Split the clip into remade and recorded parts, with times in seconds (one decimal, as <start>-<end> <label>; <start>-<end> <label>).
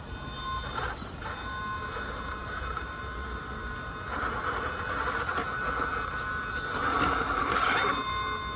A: 0.0-2.4 recorded; 2.4-3.9 remade; 3.9-8.6 recorded